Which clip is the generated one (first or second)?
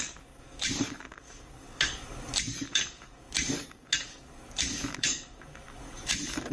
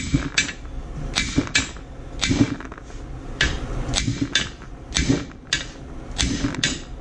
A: first